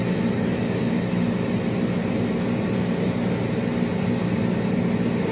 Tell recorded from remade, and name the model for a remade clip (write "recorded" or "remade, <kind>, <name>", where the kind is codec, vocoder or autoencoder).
recorded